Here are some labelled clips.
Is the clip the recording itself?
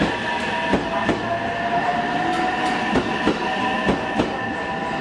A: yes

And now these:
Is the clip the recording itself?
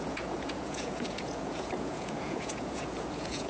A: no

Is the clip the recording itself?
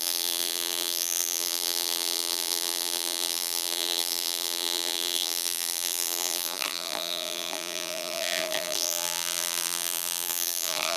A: no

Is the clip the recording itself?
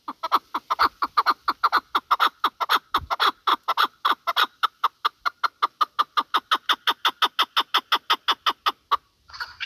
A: yes